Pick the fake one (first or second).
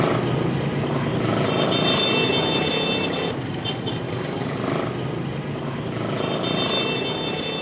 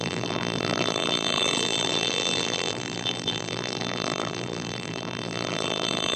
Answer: second